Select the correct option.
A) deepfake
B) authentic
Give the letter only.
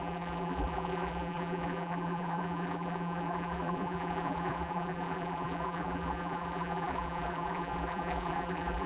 A